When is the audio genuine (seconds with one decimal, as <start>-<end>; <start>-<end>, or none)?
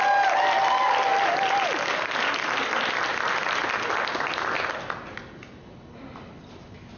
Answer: 0.0-7.0